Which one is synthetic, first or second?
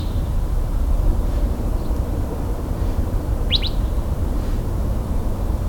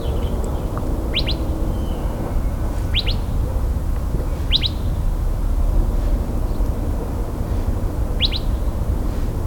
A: first